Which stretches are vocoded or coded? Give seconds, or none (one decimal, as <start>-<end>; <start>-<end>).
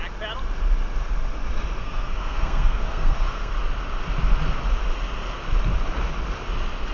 1.8-3.5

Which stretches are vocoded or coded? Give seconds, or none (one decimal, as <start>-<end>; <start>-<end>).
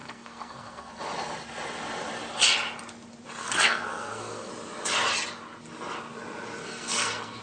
0.0-0.9; 3.4-4.5; 6.6-7.4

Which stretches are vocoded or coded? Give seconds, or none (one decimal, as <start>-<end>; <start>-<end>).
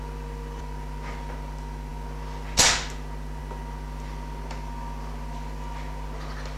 none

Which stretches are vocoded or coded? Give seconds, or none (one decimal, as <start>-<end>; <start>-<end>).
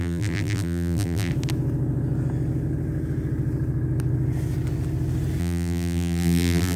0.0-1.3; 5.4-6.8